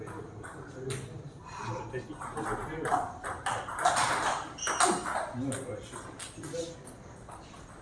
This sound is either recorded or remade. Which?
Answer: recorded